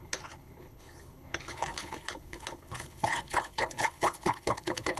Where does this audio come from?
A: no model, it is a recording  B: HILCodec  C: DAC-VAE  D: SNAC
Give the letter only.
B